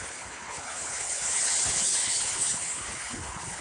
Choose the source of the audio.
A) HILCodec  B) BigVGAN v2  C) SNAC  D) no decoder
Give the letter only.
A